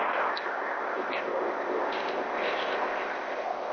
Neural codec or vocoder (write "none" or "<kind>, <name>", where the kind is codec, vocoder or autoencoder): codec, ZipCodec